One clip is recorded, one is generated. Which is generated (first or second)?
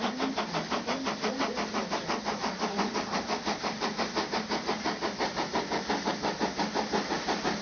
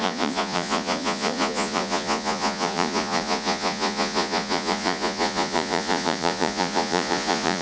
second